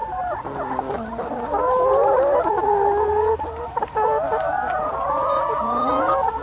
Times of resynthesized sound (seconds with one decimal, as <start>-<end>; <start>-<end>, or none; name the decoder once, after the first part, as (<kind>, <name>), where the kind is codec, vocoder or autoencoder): 0.0-2.6 (vocoder, BigVGAN v2); 4.8-6.4